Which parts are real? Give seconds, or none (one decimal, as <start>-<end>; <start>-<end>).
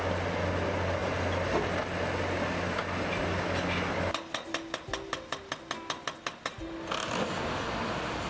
0.0-8.3